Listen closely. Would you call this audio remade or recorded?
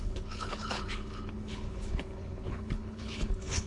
remade